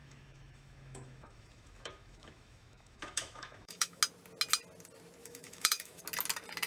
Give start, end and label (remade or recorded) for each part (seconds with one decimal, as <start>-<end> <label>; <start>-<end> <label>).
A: 0.0-4.0 remade; 4.0-5.2 recorded; 5.2-6.0 remade; 6.0-6.7 recorded